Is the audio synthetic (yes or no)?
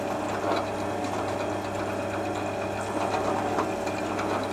no